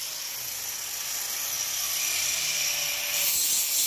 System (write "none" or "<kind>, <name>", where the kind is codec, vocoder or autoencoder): none